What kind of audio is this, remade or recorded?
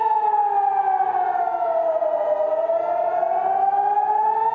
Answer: recorded